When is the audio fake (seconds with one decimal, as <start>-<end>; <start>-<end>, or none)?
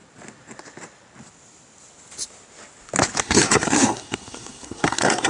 3.2-5.3